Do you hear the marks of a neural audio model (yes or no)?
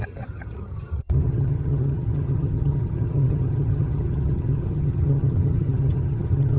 yes